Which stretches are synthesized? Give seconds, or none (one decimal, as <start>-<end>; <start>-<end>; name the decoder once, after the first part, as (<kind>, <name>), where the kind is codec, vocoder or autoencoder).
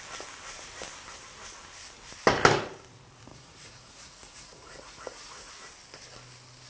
3.3-5.5 (vocoder, Vocos)